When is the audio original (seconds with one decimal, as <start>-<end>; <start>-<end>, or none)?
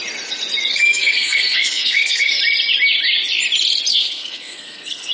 0.0-0.7; 2.4-3.9